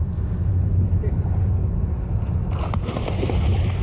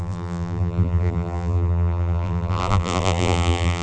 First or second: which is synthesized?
second